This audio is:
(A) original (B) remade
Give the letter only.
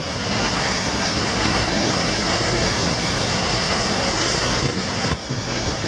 B